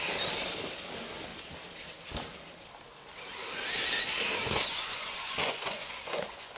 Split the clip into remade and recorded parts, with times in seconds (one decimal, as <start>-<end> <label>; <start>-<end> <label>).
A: 0.0-4.4 recorded; 4.4-6.6 remade